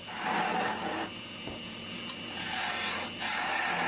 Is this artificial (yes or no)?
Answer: no